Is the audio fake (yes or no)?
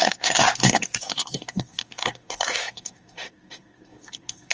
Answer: yes